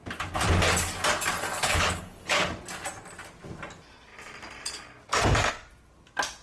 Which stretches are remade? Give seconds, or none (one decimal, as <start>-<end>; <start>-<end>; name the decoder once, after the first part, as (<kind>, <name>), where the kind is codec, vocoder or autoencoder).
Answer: 1.6-2.5 (codec, HILCodec)